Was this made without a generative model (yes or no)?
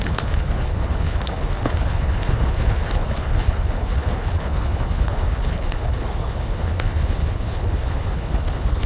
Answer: no